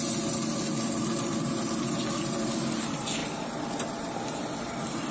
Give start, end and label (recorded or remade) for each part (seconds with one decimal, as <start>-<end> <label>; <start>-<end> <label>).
0.0-5.1 recorded

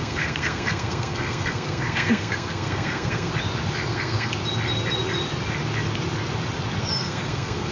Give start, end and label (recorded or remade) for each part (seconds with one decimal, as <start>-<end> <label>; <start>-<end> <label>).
0.0-3.3 remade; 3.3-3.9 recorded; 3.9-4.3 remade; 4.3-6.8 recorded; 6.8-7.7 remade

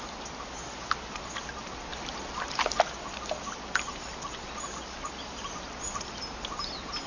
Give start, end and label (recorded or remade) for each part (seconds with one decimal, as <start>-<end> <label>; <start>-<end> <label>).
0.0-7.1 recorded

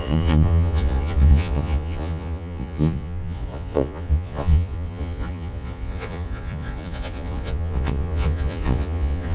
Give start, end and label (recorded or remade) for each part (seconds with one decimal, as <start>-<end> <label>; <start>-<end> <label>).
0.0-9.3 remade

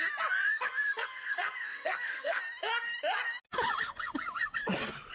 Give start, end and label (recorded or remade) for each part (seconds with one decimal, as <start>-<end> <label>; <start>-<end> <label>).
0.0-0.5 recorded; 0.5-2.4 remade; 2.4-5.1 recorded

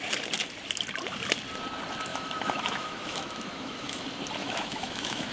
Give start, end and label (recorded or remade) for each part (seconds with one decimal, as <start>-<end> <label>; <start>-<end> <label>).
0.0-2.1 recorded; 2.1-4.0 remade; 4.0-4.4 recorded; 4.4-5.3 remade

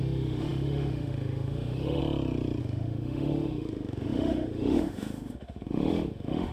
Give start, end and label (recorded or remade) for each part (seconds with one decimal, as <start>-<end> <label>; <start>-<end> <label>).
0.0-2.0 remade; 2.0-2.6 recorded; 2.6-6.5 remade